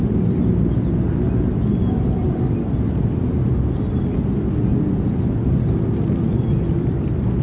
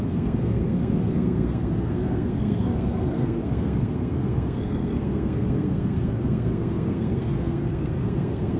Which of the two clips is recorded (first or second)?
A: first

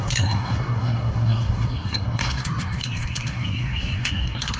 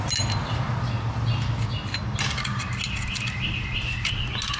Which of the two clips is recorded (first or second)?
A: second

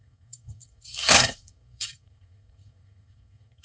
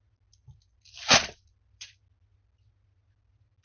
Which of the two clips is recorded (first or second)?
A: second